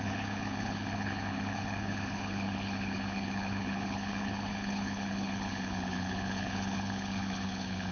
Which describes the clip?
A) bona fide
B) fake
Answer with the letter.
B